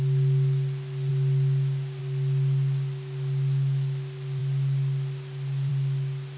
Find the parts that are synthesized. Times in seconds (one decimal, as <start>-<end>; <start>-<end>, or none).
none